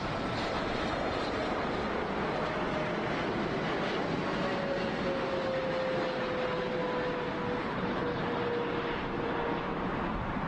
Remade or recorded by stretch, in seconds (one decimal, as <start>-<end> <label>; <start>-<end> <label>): 0.0-7.6 recorded; 7.6-8.2 remade; 8.2-10.5 recorded